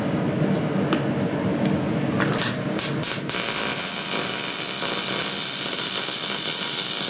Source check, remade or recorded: recorded